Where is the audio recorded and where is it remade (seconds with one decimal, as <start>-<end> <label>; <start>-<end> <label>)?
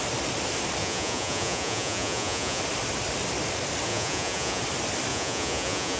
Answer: 0.0-0.8 recorded; 0.8-2.6 remade; 2.6-3.9 recorded; 3.9-4.6 remade; 4.6-5.1 recorded; 5.1-6.0 remade